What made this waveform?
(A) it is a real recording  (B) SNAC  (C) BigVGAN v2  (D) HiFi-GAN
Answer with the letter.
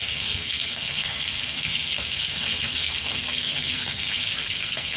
B